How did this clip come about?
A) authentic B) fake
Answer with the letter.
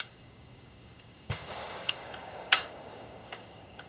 B